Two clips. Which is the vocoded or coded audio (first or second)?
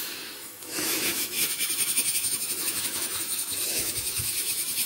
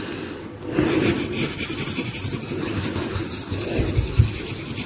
first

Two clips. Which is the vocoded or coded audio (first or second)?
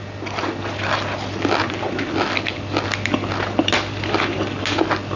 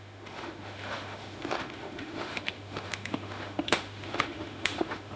second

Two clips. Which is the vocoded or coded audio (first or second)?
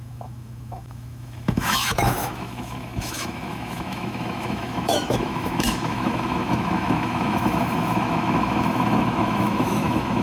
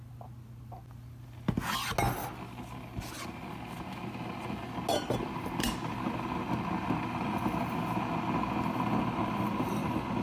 first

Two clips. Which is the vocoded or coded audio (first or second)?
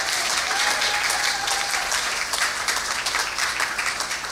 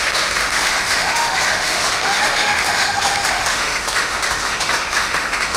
second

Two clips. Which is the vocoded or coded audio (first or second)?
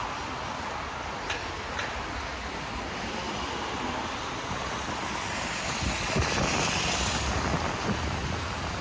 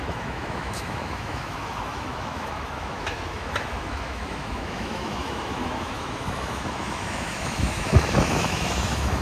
second